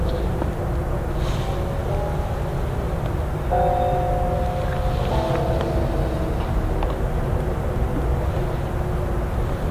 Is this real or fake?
real